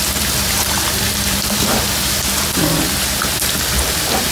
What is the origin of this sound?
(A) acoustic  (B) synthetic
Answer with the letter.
B